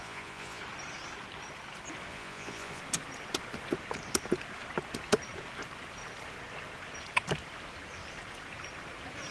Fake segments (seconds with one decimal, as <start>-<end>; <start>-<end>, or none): 0.0-0.6; 2.1-2.8